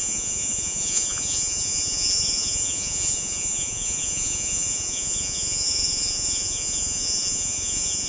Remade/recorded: remade